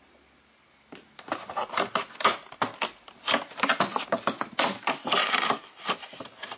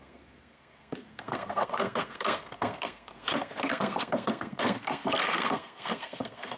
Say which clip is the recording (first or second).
first